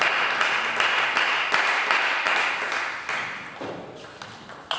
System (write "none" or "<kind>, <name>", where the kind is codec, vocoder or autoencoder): none